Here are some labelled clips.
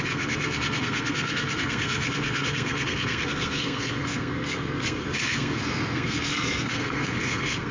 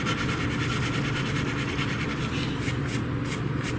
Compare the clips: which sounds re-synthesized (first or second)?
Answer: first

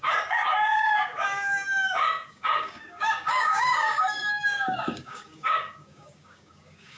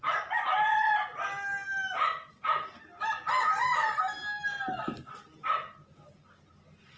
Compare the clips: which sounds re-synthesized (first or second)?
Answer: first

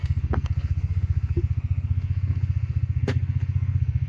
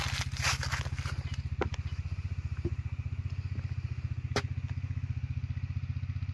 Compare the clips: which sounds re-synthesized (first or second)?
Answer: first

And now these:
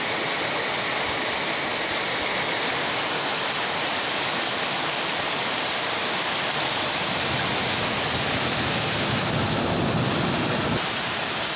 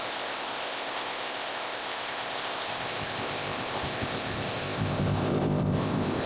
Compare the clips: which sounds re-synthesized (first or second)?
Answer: second